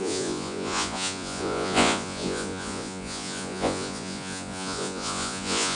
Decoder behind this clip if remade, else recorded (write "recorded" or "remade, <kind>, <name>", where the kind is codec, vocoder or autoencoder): remade, vocoder, Vocos